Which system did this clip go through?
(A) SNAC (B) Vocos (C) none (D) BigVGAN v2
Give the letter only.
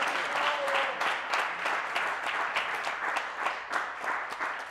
D